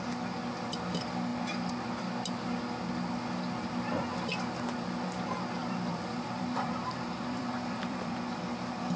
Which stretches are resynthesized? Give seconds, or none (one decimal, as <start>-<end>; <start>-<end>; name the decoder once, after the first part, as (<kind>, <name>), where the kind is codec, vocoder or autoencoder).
5.6-8.4 (vocoder, BigVGAN v2)